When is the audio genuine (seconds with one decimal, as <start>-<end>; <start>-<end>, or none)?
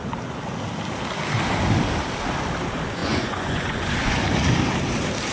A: 0.0-3.0; 4.2-5.3